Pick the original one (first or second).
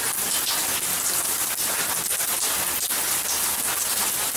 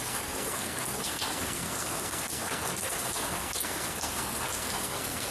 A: first